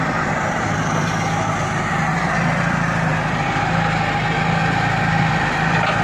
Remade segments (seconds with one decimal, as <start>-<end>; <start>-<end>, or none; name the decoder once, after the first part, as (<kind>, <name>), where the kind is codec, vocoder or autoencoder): 0.0-4.6 (vocoder, BigVGAN v2); 5.2-6.0